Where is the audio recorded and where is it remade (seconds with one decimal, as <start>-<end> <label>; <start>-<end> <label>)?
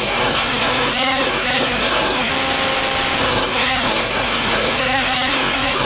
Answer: 0.0-2.3 remade; 2.3-3.2 recorded; 3.2-5.9 remade